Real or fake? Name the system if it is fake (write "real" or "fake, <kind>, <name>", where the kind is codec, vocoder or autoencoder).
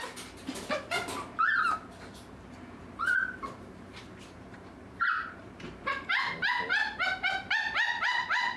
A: fake, vocoder, BigVGAN v2